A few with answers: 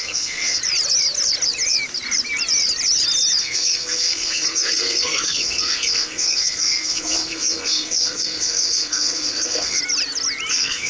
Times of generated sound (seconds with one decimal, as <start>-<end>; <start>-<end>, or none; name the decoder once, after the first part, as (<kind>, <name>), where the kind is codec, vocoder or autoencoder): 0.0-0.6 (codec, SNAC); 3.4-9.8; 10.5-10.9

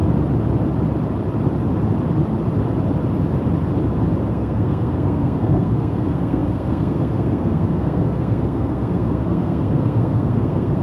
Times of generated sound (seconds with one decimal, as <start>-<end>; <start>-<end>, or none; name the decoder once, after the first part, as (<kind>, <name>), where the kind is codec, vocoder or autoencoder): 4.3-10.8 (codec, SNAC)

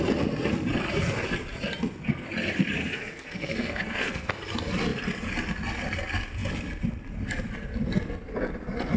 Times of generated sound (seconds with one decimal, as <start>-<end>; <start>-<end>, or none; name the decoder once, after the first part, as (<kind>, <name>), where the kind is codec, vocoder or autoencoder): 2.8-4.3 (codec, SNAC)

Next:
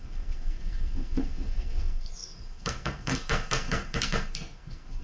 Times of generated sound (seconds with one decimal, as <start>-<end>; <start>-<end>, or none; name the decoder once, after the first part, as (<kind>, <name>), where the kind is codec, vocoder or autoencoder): 0.0-5.0 (codec, SNAC)

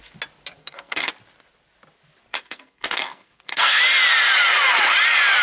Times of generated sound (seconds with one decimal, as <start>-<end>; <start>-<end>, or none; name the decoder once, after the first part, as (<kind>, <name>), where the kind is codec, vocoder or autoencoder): 0.6-1.1 (codec, SNAC); 2.3-3.8

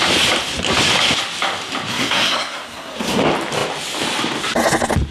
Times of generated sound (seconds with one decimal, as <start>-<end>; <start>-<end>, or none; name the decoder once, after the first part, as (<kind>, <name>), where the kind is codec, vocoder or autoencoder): 1.9-3.2 (codec, SNAC)

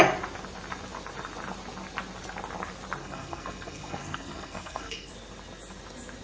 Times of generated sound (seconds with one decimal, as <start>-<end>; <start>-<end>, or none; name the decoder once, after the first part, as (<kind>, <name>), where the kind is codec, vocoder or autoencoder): 3.0-5.1 (codec, SNAC)

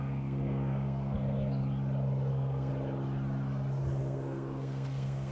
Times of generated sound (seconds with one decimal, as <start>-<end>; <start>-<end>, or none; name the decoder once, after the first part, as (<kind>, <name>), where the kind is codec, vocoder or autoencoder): 0.0-1.6 (codec, SNAC); 2.3-2.7; 4.0-5.3